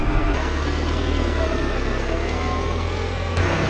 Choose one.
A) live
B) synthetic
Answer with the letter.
B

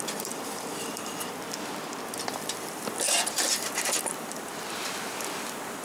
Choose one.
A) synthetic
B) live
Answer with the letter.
A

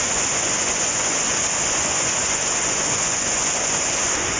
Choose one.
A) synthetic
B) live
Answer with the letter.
A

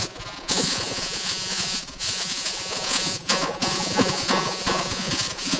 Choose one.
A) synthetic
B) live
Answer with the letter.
A